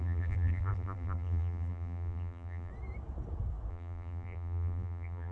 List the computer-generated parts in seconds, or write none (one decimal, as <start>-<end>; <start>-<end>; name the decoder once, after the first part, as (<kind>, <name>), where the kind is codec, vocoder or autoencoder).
0.0-2.7 (vocoder, BigVGAN v2); 3.7-5.3